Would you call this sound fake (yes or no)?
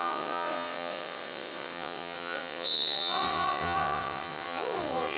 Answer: yes